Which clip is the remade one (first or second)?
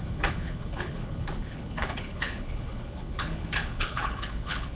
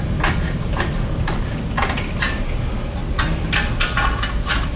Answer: first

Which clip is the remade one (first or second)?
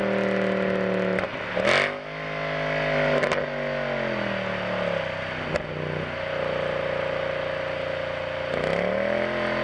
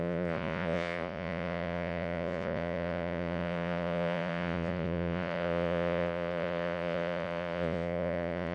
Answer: second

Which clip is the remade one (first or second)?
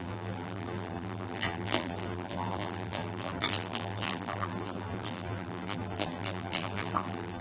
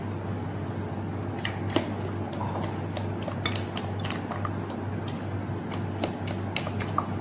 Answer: first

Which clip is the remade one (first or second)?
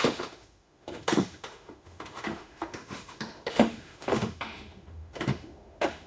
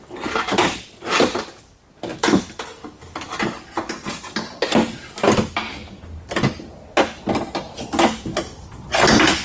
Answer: first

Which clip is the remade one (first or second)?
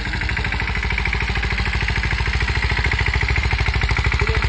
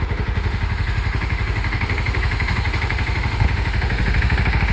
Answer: second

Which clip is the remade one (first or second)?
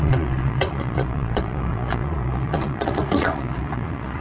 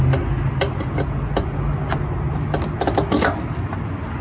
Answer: first